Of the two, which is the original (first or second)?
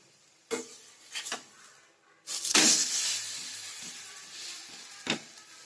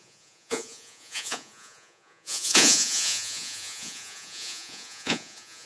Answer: first